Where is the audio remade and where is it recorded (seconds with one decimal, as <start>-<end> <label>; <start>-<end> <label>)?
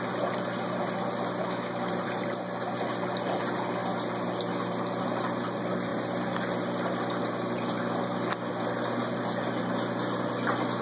0.0-1.4 recorded; 1.4-1.9 remade; 1.9-10.8 recorded